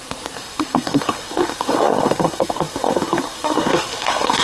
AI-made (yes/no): yes